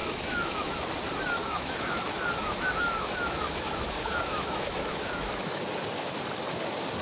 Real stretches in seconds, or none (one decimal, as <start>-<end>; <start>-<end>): 0.8-1.4; 5.6-7.0